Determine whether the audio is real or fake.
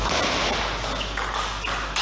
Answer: real